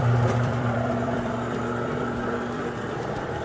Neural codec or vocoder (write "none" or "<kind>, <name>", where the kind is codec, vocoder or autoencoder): vocoder, BigVGAN v2